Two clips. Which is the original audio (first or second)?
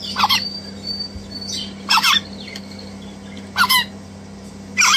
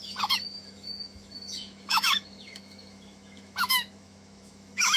first